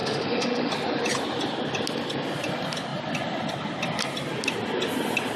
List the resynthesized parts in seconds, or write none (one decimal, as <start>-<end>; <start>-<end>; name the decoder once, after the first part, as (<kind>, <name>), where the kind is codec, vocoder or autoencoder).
0.0-0.7 (autoencoder, DAC-VAE)

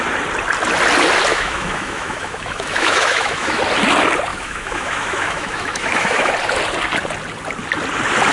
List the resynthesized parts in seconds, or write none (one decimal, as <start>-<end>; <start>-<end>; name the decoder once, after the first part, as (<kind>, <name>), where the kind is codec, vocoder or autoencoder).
1.3-3.6 (autoencoder, DAC-VAE); 4.3-6.3

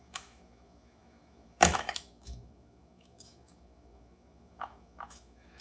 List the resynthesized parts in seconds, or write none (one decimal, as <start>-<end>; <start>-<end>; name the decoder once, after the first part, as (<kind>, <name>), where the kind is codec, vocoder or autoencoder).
0.0-5.6 (autoencoder, DAC-VAE)

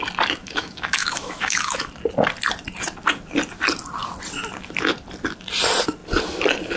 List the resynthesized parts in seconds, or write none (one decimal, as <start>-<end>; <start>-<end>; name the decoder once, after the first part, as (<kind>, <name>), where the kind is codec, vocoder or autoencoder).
0.4-1.9 (autoencoder, DAC-VAE)

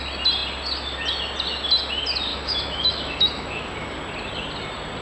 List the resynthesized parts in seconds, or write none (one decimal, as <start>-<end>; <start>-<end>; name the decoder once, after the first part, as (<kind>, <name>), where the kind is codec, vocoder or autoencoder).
2.3-3.7 (autoencoder, DAC-VAE)

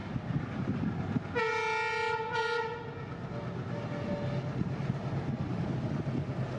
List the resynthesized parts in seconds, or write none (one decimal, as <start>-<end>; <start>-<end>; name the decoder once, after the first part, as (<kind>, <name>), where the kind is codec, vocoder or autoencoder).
none